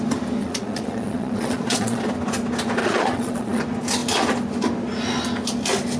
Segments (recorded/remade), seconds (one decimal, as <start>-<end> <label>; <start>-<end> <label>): 0.0-0.4 recorded; 0.4-2.0 remade; 2.0-2.8 recorded; 2.8-3.6 remade; 3.6-6.0 recorded